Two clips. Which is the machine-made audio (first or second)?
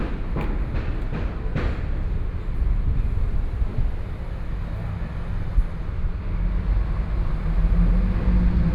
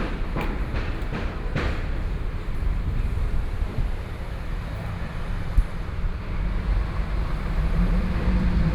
second